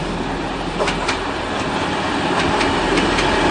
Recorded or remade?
recorded